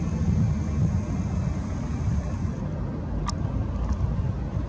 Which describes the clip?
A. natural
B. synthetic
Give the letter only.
A